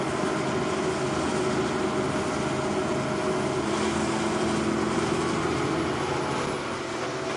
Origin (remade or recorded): recorded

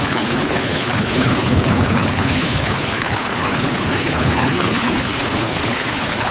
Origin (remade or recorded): remade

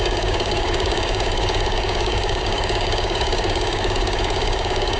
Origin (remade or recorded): remade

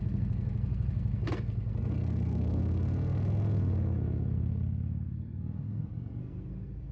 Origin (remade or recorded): remade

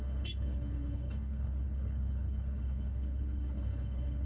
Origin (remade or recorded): remade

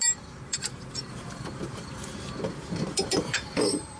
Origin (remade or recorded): remade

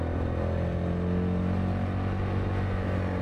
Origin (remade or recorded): recorded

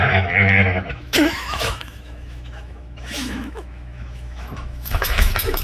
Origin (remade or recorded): remade